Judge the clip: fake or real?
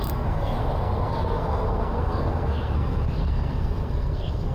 fake